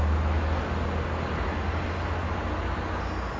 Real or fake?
real